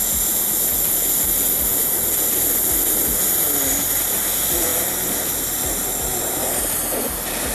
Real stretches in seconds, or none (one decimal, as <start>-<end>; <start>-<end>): 0.0-7.5